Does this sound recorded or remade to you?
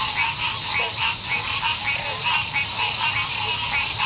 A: recorded